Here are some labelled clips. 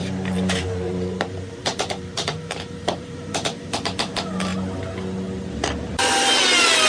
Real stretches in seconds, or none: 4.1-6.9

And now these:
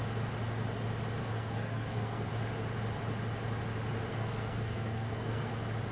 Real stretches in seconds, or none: 0.0-1.2; 2.3-4.1; 5.5-5.9

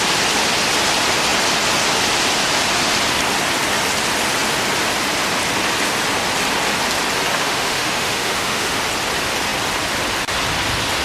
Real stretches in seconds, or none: 0.0-7.3; 8.8-11.0

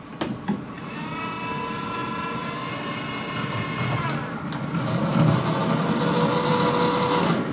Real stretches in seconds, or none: 0.0-7.5

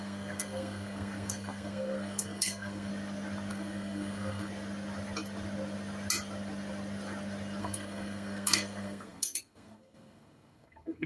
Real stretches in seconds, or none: 2.9-3.5; 4.5-7.6

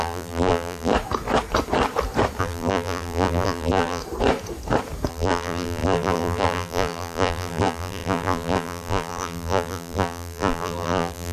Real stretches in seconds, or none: 0.9-2.4; 4.0-5.1